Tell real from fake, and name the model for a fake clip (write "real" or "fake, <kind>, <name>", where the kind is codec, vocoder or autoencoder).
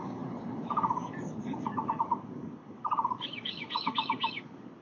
fake, codec, DAC